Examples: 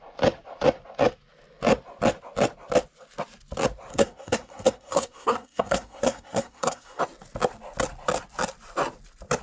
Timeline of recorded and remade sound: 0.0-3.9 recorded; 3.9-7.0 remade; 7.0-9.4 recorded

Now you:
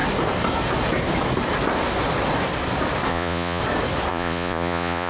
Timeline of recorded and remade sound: 0.0-3.1 recorded; 3.1-3.6 remade; 3.6-4.1 recorded; 4.1-5.1 remade